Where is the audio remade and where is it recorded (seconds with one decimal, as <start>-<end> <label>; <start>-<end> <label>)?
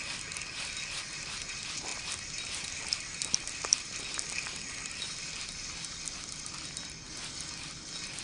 0.0-1.9 recorded; 1.9-4.0 remade; 4.0-8.2 recorded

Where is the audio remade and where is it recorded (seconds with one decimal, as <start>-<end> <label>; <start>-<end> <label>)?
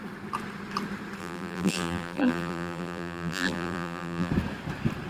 0.0-1.2 recorded; 1.2-4.3 remade; 4.3-5.1 recorded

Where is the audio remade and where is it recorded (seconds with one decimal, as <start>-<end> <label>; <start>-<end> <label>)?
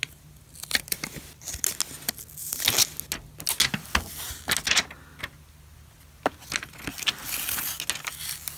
0.0-8.6 recorded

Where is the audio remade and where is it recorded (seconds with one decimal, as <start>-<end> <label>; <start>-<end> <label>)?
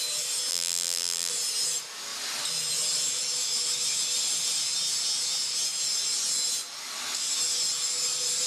0.0-0.5 recorded; 0.5-1.3 remade; 1.3-8.5 recorded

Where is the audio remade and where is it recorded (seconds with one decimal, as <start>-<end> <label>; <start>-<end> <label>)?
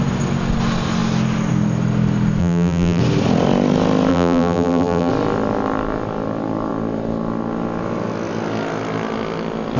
0.0-2.4 recorded; 2.4-3.0 remade; 3.0-4.1 recorded; 4.1-5.1 remade; 5.1-9.8 recorded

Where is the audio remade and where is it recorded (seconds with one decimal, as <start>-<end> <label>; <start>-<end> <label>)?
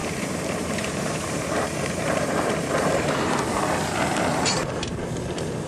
0.0-3.4 remade; 3.4-4.3 recorded; 4.3-4.9 remade; 4.9-5.7 recorded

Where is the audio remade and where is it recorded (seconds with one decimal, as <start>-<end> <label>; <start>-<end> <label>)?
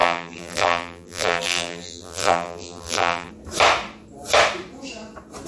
0.0-3.3 remade; 3.3-5.5 recorded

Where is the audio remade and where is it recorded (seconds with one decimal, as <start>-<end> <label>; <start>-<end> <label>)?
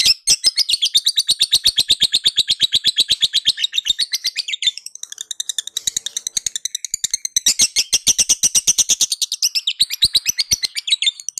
0.0-3.6 recorded; 3.6-5.0 remade; 5.0-11.4 recorded